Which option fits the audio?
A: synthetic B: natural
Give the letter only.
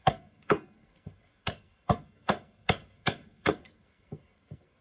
A